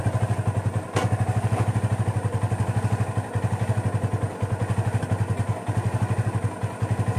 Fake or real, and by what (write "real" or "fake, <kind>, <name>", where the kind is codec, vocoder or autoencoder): real